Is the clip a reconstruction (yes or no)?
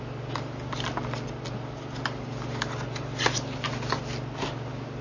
no